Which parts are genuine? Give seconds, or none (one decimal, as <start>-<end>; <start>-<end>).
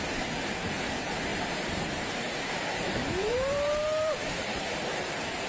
0.0-1.3; 4.6-5.5